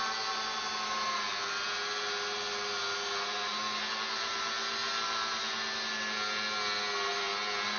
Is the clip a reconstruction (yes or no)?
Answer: no